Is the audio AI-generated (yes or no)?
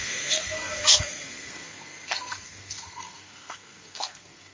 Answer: yes